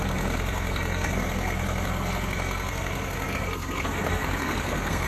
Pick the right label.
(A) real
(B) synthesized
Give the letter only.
B